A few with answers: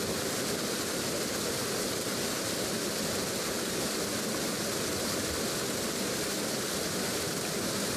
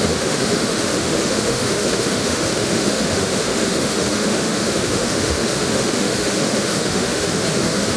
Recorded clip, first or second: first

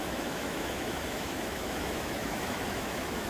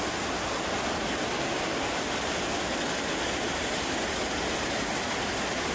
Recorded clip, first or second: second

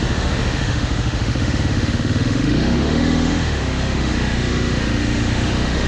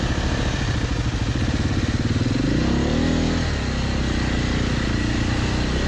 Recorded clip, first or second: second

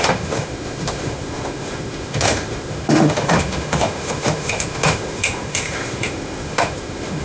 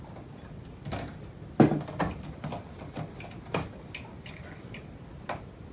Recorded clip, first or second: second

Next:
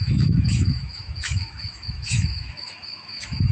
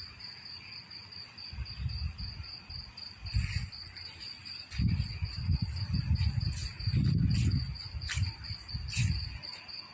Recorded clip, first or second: second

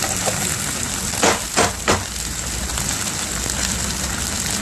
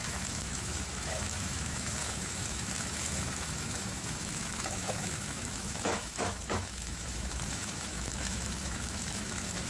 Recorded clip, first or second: first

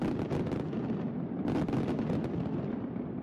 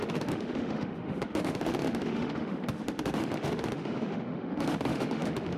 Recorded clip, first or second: first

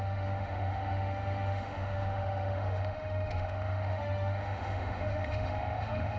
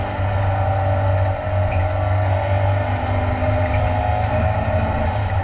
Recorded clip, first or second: second